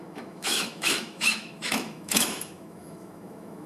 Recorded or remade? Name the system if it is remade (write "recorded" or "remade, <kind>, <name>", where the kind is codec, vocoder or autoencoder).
remade, autoencoder, DAC-VAE